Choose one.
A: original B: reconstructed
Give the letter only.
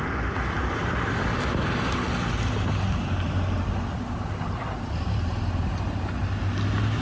A